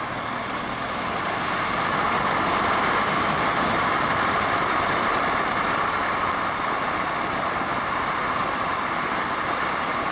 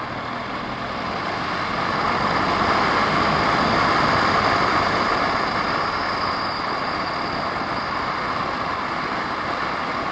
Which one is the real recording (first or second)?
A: second